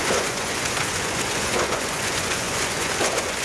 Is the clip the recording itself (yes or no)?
no